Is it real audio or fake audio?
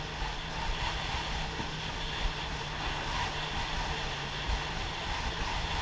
real